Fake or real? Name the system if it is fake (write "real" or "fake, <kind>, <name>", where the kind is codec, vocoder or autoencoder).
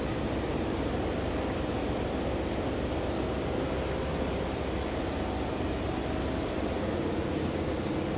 real